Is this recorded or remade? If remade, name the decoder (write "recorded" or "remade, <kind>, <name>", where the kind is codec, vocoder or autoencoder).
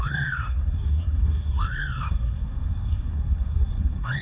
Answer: remade, codec, SNAC